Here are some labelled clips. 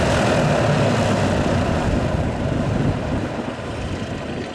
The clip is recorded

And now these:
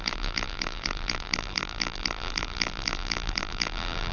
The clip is remade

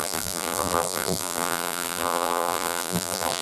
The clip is remade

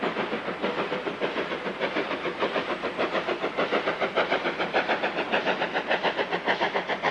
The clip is recorded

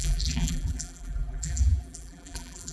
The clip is remade